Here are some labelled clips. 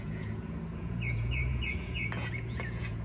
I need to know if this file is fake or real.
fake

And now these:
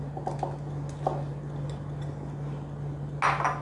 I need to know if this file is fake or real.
real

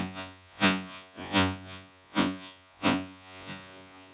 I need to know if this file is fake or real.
fake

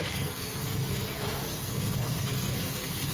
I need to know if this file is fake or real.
fake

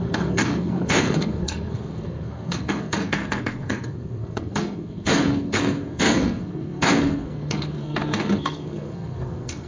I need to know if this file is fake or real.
fake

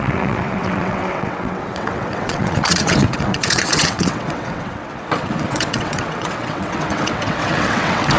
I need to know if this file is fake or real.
fake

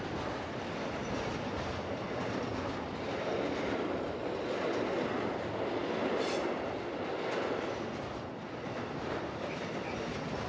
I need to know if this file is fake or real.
real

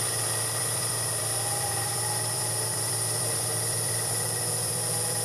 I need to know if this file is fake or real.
fake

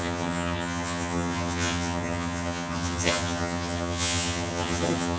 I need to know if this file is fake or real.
fake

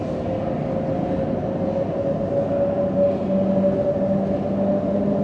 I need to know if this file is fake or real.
real